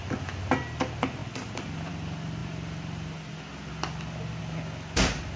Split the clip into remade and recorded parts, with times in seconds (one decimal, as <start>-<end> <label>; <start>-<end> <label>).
0.0-5.4 recorded